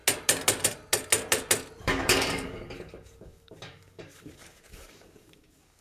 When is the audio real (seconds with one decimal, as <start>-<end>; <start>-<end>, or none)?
0.0-1.8

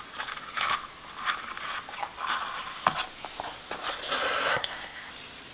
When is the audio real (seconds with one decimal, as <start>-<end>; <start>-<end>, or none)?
0.0-4.5; 5.1-5.5

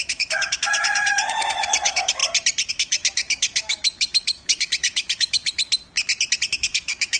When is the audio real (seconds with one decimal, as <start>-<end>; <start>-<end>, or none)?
2.2-2.7; 5.4-6.5

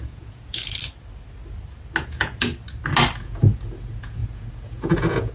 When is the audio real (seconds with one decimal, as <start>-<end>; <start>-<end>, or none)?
0.6-2.0; 2.5-3.2

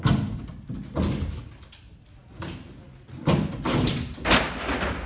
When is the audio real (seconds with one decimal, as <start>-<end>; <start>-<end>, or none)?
0.0-5.1